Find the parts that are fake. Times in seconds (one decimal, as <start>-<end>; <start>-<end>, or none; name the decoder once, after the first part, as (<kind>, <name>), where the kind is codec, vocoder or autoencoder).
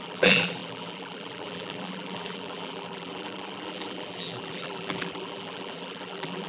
0.0-6.5 (vocoder, BigVGAN v2)